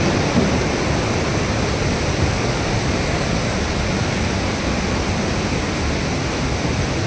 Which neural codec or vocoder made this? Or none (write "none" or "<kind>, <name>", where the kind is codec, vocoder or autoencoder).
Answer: none